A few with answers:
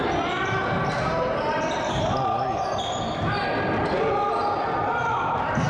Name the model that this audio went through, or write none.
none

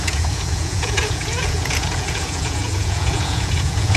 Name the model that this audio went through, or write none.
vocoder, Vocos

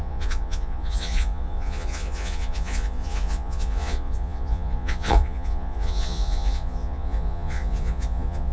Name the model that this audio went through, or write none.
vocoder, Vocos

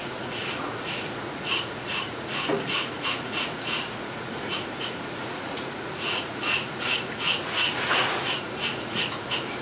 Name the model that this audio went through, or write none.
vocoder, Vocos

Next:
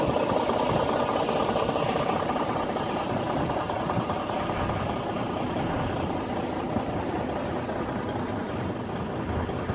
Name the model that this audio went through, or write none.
none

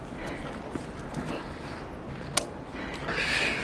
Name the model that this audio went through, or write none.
none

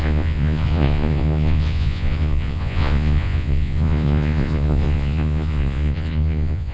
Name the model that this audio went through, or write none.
vocoder, Vocos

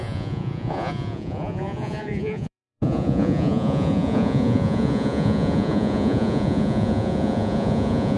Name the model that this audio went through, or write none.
vocoder, Vocos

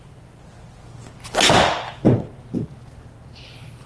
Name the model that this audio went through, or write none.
none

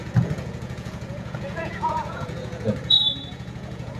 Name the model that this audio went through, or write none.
vocoder, Vocos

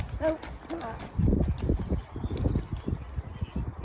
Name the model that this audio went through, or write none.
none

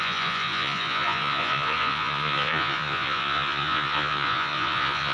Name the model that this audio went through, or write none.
vocoder, Vocos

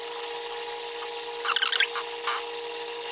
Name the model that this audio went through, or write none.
none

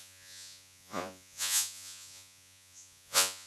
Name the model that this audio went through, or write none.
vocoder, Vocos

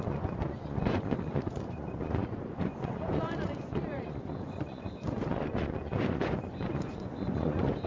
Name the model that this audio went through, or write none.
vocoder, Vocos